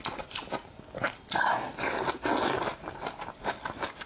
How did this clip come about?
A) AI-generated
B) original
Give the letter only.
B